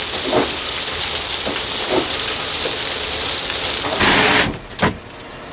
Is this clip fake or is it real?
real